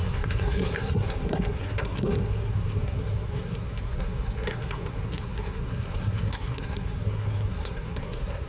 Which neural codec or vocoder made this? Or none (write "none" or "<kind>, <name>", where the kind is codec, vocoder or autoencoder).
codec, SNAC